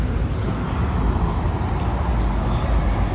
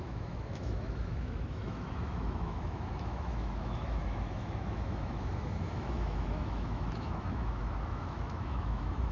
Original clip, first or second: first